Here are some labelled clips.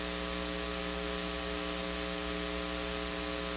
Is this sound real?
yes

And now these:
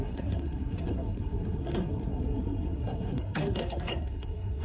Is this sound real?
no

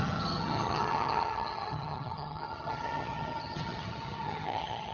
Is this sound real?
no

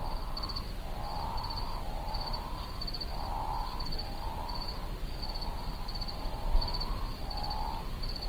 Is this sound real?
no